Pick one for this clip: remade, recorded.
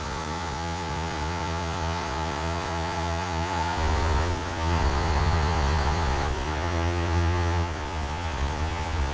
remade